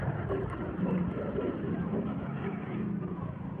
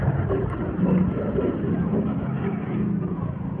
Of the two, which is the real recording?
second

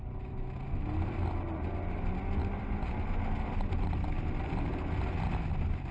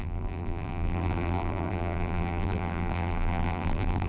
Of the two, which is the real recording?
first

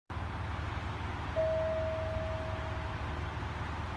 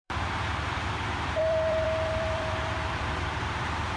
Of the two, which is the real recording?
first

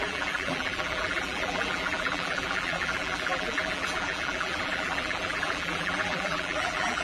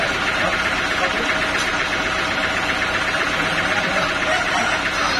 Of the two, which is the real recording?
second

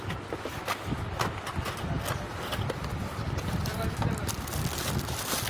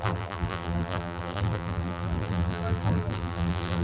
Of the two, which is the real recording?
first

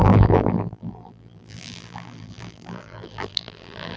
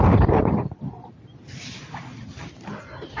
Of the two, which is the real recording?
second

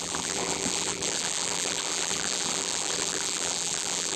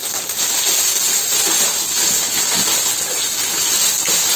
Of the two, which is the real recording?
second